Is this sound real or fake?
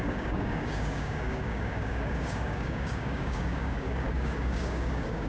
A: fake